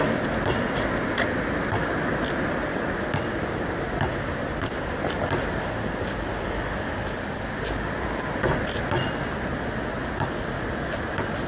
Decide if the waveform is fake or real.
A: real